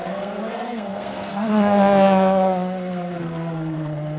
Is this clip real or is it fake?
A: fake